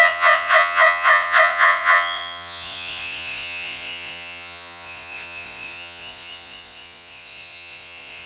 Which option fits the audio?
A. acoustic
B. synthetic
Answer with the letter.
B